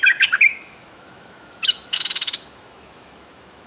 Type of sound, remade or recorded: remade